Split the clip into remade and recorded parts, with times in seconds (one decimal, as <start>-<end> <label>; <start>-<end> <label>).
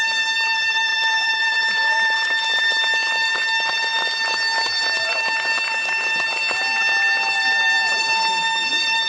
0.0-0.9 recorded; 0.9-2.7 remade; 2.7-9.1 recorded